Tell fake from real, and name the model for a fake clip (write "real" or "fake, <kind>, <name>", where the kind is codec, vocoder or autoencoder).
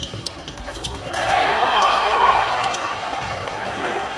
fake, codec, SNAC